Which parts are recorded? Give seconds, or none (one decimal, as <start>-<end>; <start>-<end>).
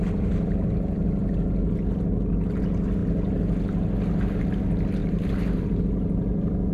0.0-5.0; 5.8-6.7